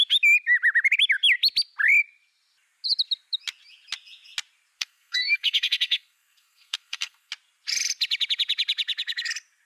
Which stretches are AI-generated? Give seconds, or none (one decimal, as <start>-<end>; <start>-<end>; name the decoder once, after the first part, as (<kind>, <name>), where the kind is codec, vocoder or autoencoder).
4.8-7.3 (codec, SNAC)